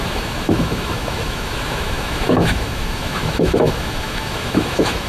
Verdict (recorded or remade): remade